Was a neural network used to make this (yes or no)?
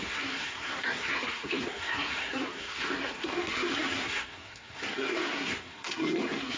yes